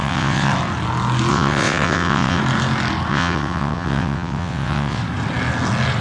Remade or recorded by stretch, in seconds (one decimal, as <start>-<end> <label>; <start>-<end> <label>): 0.0-0.5 remade; 0.5-1.3 recorded; 1.3-2.4 remade; 2.4-3.1 recorded; 3.1-5.0 remade; 5.0-6.0 recorded